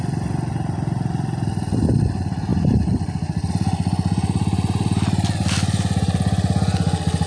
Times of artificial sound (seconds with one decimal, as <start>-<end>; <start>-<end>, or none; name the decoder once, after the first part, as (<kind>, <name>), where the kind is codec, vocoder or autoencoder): none

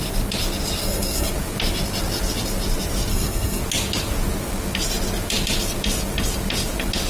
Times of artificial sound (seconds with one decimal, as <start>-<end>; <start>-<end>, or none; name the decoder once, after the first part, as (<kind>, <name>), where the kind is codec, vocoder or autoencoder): 0.8-1.3 (codec, SNAC); 3.1-3.6

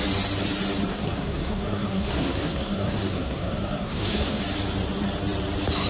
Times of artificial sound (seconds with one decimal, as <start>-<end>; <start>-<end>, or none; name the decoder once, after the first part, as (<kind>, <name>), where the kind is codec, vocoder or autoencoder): 0.9-4.4 (codec, SNAC)

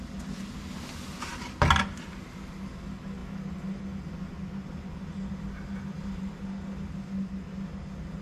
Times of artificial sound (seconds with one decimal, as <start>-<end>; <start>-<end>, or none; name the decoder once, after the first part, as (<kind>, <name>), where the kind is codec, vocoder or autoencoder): none

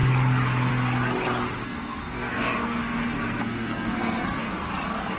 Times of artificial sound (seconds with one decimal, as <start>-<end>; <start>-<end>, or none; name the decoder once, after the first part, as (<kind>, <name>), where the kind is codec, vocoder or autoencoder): 1.6-4.7 (codec, SNAC)